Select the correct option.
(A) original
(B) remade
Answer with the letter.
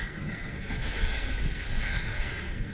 B